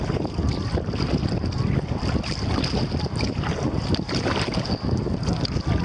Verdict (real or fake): real